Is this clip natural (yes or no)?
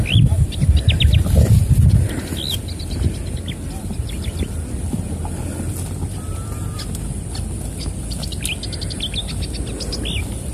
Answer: yes